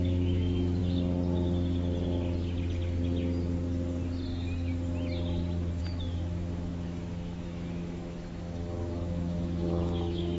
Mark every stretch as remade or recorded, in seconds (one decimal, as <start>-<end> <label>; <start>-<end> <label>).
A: 0.0-0.8 remade; 0.8-5.8 recorded; 5.8-10.4 remade